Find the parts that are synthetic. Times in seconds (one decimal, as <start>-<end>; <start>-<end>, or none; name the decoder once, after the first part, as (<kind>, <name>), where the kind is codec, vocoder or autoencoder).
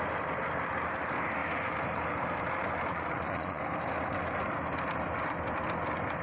2.9-3.6 (vocoder, Vocos)